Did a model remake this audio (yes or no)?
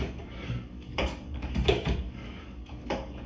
yes